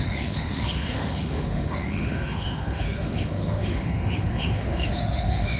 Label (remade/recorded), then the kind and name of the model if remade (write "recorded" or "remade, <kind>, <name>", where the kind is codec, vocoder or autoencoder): remade, autoencoder, DAC-VAE